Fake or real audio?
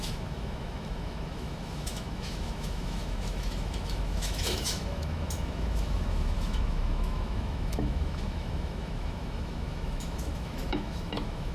fake